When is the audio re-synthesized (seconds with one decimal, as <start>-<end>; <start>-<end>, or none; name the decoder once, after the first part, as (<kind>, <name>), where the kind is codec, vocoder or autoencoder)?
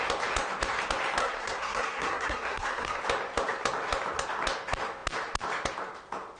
1.2-3.0 (codec, SNAC)